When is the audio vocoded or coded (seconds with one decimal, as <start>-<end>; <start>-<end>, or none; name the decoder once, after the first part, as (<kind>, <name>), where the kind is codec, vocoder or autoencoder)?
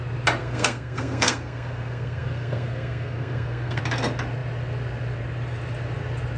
0.4-3.8 (codec, SNAC)